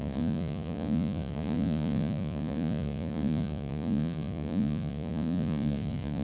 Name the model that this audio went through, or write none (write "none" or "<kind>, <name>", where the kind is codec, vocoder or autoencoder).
vocoder, Vocos